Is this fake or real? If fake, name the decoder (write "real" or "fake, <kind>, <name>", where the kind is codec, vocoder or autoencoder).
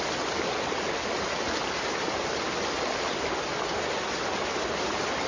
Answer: real